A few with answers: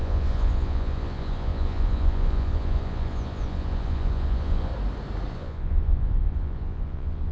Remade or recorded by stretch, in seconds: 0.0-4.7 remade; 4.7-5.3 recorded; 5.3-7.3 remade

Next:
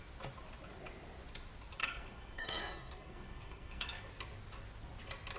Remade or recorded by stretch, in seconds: 0.0-1.8 recorded; 1.8-4.1 remade; 4.1-5.4 recorded

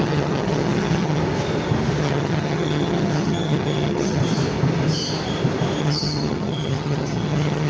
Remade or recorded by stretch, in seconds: 0.0-1.2 remade; 1.2-2.0 recorded; 2.0-4.2 remade; 4.2-5.8 recorded; 5.8-7.7 remade

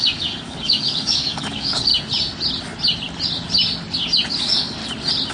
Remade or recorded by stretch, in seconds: 0.0-1.9 remade; 1.9-4.3 recorded; 4.3-4.8 remade; 4.8-5.3 recorded

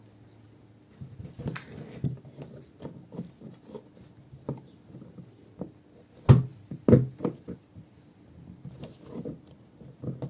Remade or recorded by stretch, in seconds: 0.0-10.3 recorded

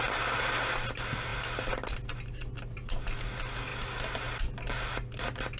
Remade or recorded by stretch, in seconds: 0.0-5.6 recorded

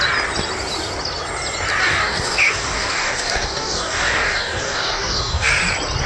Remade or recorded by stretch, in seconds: 0.0-1.8 recorded; 1.8-5.5 remade; 5.5-6.1 recorded

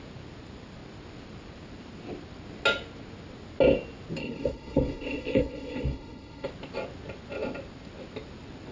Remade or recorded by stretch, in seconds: 0.0-4.2 recorded; 4.2-6.5 remade; 6.5-8.7 recorded